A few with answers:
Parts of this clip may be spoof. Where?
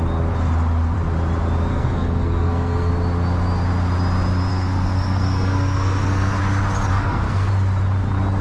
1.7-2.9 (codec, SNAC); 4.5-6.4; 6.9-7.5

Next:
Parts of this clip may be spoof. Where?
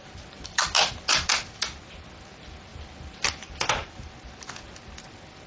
none